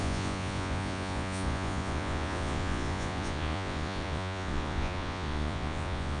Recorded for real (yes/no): no